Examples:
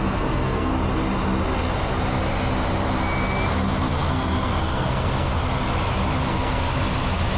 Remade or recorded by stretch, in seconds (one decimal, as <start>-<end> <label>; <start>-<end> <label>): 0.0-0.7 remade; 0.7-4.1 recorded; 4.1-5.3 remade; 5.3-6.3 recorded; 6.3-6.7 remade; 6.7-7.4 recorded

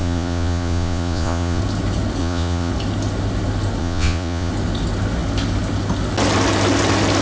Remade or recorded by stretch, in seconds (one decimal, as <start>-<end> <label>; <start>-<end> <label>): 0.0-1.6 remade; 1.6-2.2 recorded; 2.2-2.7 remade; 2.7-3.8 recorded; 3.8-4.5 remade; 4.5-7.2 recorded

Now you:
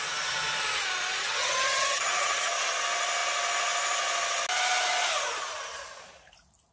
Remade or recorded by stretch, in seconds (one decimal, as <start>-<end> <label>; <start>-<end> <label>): 0.0-1.2 recorded; 1.2-2.5 remade; 2.5-6.7 recorded

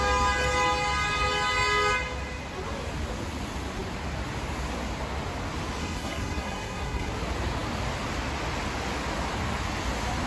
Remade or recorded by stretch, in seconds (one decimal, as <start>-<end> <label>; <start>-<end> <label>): 0.0-5.8 recorded; 5.8-7.1 remade; 7.1-10.3 recorded